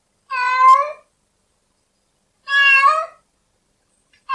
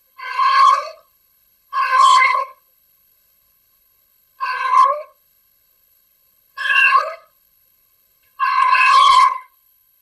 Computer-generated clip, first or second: second